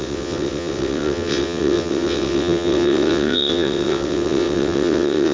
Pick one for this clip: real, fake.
fake